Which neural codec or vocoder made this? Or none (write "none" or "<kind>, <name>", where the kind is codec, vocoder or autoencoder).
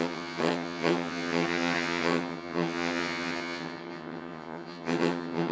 vocoder, HiFi-GAN